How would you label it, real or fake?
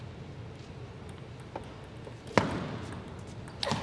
real